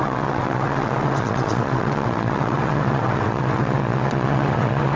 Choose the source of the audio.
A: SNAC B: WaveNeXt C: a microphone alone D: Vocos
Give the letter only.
B